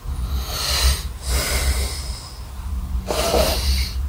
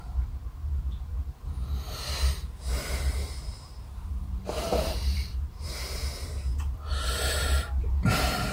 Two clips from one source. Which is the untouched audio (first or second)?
first